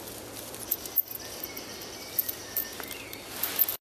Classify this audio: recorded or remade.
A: recorded